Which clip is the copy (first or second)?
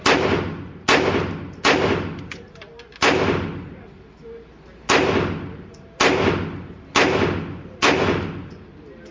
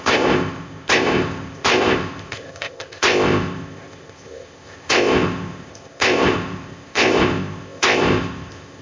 second